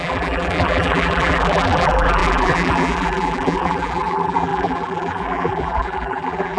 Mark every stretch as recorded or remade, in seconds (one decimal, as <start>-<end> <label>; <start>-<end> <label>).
0.0-6.6 remade